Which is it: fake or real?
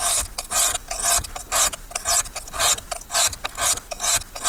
real